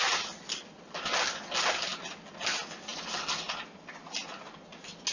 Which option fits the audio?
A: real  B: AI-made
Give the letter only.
A